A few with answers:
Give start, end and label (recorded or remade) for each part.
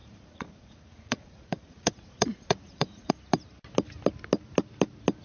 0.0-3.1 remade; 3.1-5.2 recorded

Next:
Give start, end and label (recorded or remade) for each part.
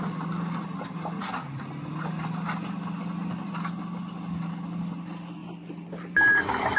0.0-6.8 recorded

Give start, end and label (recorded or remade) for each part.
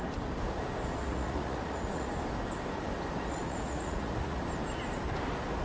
0.0-1.0 recorded; 1.0-2.2 remade; 2.2-3.4 recorded; 3.4-4.4 remade; 4.4-5.6 recorded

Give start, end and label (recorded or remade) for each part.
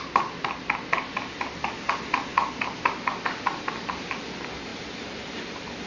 0.0-2.3 recorded; 2.3-3.2 remade; 3.2-5.9 recorded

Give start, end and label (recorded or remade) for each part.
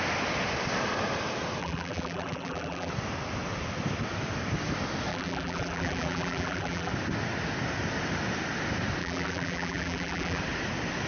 0.0-1.6 recorded; 1.6-2.9 remade; 2.9-5.1 recorded; 5.1-6.9 remade; 6.9-9.0 recorded; 9.0-10.4 remade; 10.4-11.1 recorded